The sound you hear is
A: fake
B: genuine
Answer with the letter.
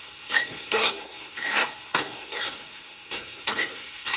A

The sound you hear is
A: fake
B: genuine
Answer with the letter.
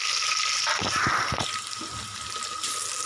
B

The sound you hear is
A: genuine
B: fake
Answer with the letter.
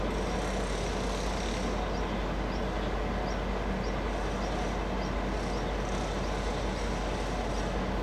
A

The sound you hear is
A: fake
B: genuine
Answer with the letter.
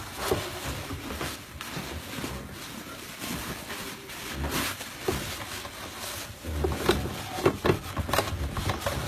B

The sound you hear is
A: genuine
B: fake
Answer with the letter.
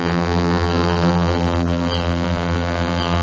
B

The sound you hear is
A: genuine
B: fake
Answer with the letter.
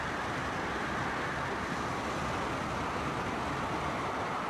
A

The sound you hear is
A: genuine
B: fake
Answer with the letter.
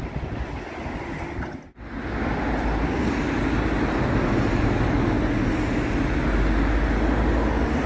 A